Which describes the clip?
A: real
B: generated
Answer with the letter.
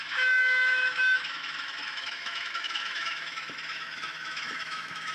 B